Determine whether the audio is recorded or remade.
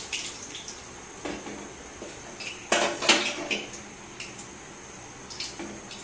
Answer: recorded